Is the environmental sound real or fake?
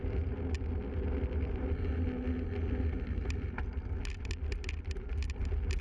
real